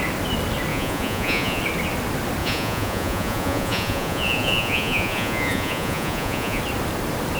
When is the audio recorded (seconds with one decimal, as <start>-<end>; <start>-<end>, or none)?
0.0-0.7; 1.6-2.4; 6.6-7.4